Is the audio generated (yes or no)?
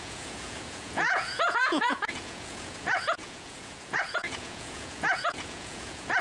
yes